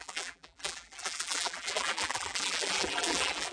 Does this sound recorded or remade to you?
remade